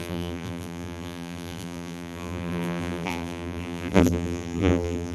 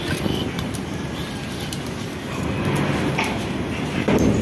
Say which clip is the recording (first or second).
second